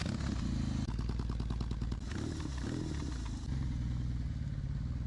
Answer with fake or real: real